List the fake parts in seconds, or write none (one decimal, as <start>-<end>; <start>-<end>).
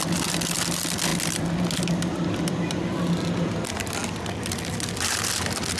none